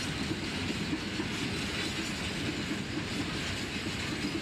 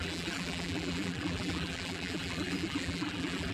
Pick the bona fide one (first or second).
first